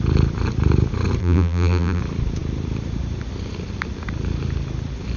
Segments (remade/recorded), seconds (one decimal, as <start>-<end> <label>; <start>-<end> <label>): 0.0-1.2 recorded; 1.2-2.0 remade; 2.0-5.2 recorded